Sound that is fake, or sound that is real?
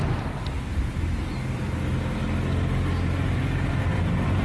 real